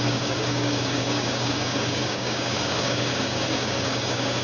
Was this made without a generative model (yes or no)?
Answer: no